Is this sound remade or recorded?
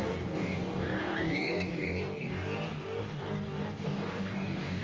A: remade